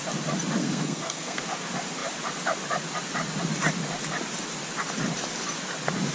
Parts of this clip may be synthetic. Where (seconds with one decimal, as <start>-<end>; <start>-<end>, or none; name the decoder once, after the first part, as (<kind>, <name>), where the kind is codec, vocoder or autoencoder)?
0.6-1.4 (codec, SNAC)